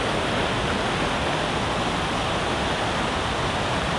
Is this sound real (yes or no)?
yes